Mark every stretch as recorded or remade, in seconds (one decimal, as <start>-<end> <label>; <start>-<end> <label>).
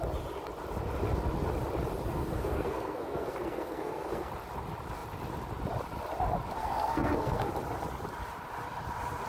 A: 0.0-2.1 recorded; 2.1-4.3 remade; 4.3-6.6 recorded; 6.6-7.5 remade; 7.5-9.3 recorded